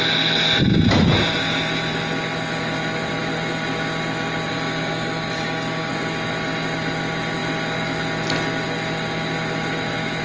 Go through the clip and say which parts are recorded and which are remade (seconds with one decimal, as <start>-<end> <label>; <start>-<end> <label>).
0.0-4.5 recorded; 4.5-5.9 remade; 5.9-10.2 recorded